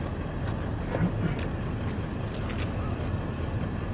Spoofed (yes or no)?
no